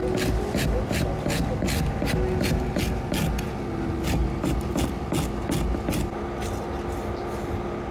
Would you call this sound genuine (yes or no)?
yes